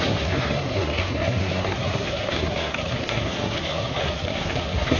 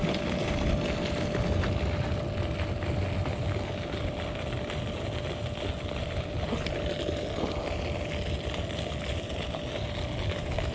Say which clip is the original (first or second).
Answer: second